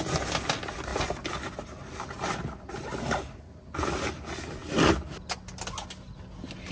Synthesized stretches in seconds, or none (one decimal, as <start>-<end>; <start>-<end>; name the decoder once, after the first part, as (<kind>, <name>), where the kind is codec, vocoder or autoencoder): none